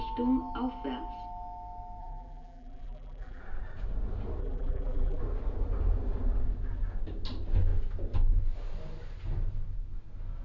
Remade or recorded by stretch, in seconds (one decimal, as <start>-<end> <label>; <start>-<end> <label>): 0.0-2.0 recorded; 2.0-3.4 remade; 3.4-4.4 recorded; 4.4-5.2 remade; 5.2-10.4 recorded